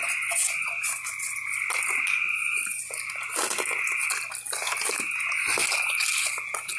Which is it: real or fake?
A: real